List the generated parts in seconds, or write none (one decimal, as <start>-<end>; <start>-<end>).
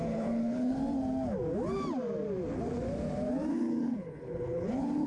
0.0-0.8; 3.5-5.1